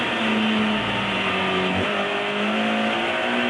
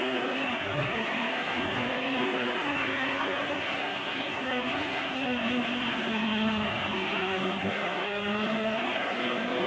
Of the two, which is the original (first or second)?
first